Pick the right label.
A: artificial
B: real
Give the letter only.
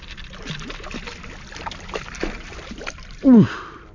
A